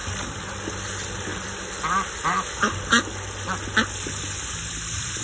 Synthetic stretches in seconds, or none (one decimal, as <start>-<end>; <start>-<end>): 0.8-1.3; 4.4-5.2